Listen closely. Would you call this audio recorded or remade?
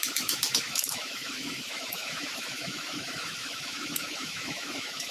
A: remade